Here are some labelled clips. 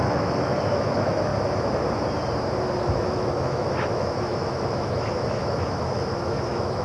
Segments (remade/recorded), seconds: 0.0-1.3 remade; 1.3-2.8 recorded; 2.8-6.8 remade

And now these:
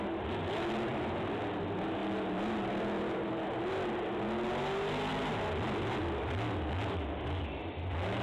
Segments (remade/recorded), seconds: 0.0-0.9 recorded; 0.9-1.4 remade; 1.4-2.0 recorded; 2.0-3.7 remade; 3.7-8.2 recorded

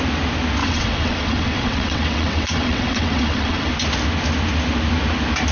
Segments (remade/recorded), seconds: 0.0-0.6 recorded; 0.6-3.7 remade; 3.7-5.5 recorded

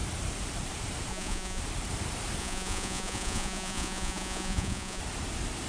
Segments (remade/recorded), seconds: 0.0-1.1 recorded; 1.1-1.6 remade; 1.6-2.4 recorded; 2.4-5.0 remade; 5.0-5.7 recorded

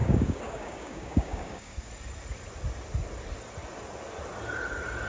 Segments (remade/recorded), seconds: 0.0-1.9 remade; 1.9-5.1 recorded